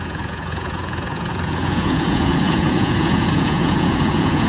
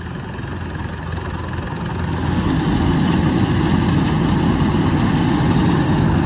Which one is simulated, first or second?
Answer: first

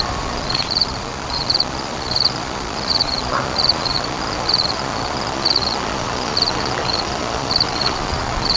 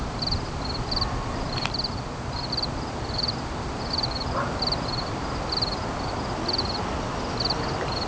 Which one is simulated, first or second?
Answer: first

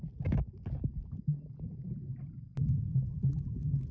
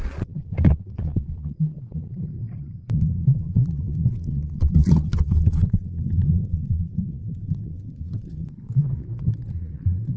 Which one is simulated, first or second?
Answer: second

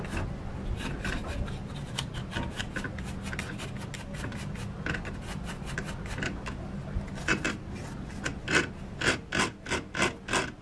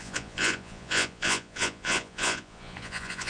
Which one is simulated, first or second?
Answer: second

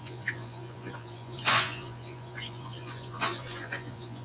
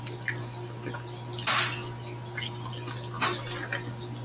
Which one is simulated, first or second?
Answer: first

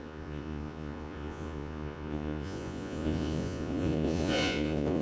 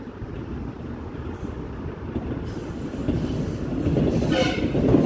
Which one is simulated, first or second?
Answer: first